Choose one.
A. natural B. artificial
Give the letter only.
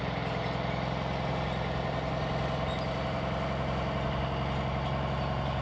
A